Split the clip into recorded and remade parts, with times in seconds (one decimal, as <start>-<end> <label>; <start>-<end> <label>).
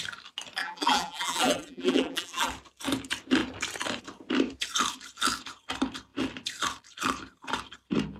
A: 0.0-0.6 recorded; 0.6-2.5 remade; 2.5-8.2 recorded